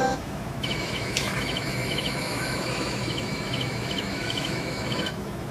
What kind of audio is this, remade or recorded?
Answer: remade